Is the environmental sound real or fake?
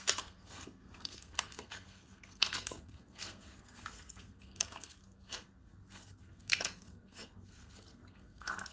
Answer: fake